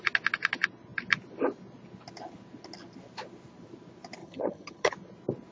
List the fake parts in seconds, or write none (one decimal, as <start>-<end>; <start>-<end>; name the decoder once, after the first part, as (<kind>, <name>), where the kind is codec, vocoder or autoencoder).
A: 4.2-4.9 (vocoder, HiFi-GAN)